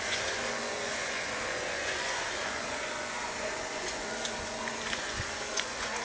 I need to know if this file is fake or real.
fake